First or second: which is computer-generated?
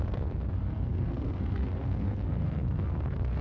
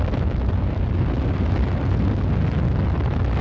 first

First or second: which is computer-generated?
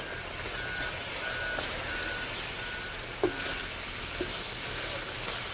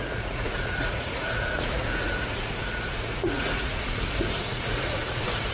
second